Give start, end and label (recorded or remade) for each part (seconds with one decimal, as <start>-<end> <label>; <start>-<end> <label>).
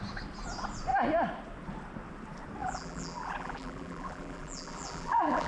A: 0.0-2.6 recorded; 2.6-5.5 remade